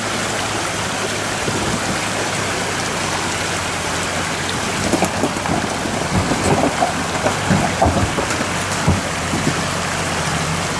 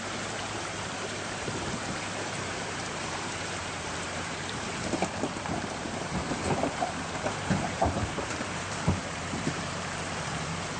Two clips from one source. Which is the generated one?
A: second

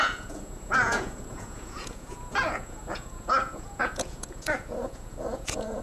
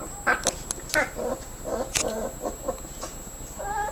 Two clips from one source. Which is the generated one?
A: first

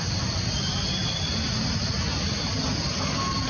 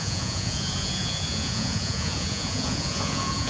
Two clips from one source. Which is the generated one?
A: second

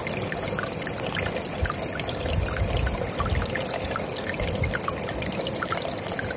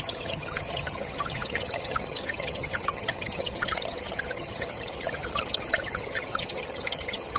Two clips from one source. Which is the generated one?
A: second